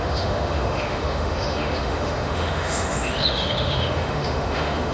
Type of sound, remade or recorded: remade